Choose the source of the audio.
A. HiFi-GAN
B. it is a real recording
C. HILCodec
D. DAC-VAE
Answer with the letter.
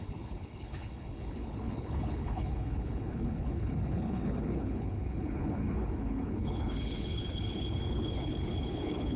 C